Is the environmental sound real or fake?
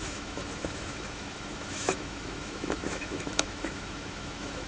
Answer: fake